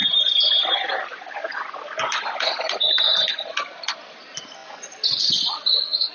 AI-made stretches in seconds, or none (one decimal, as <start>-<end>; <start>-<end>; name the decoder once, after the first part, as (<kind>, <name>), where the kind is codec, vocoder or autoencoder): none